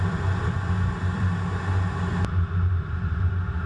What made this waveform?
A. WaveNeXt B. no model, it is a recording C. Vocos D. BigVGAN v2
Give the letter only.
D